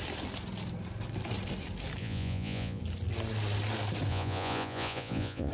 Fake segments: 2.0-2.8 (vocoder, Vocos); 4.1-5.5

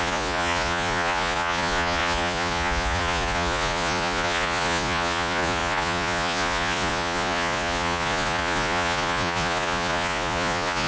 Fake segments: 0.0-10.9 (vocoder, Vocos)

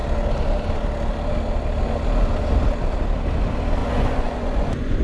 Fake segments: 3.8-5.0 (vocoder, Vocos)

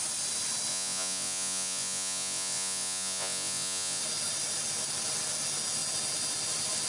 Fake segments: 0.7-4.0 (vocoder, Vocos)

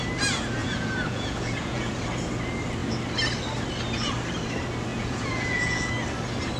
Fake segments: 0.6-1.9 (vocoder, Vocos); 4.9-5.9